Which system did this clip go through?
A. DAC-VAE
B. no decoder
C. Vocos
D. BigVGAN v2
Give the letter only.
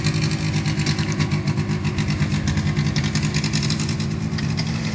B